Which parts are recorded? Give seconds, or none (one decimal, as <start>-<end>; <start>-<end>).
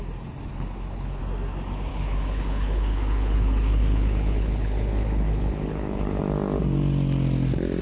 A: 0.0-0.5; 1.2-1.9; 6.2-7.8